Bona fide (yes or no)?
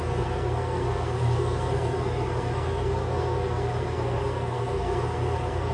no